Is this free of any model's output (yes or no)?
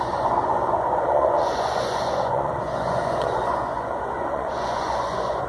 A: no